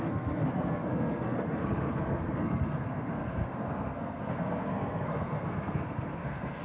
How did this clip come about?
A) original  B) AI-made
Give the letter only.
B